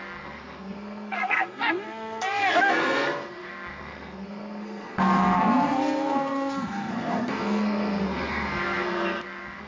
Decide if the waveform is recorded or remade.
remade